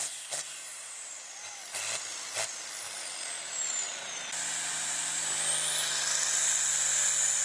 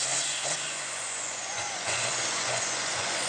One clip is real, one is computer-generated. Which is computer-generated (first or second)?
second